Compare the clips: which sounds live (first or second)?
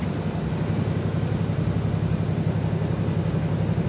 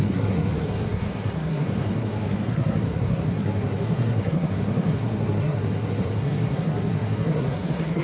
first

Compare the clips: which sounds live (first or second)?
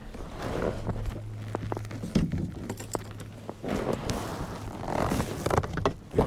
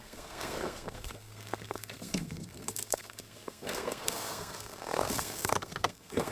first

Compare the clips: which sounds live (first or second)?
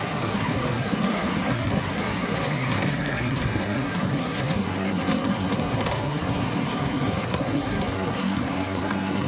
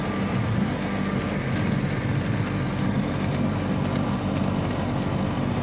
second